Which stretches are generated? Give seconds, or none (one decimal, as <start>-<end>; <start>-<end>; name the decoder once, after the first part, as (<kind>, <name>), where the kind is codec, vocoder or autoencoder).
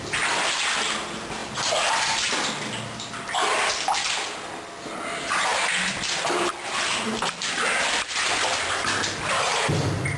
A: 1.4-3.7 (vocoder, BigVGAN v2)